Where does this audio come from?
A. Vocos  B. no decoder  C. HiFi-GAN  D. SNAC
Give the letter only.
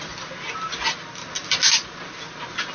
B